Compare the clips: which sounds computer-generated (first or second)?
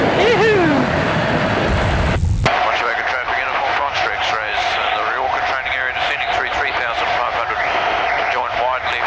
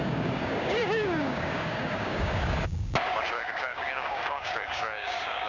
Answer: second